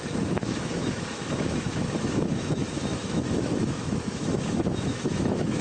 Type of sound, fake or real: fake